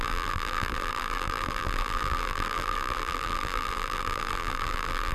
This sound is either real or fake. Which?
fake